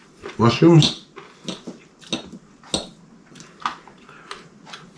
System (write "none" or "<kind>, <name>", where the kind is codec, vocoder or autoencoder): none